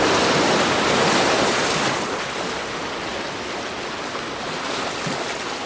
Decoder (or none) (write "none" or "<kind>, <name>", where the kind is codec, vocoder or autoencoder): none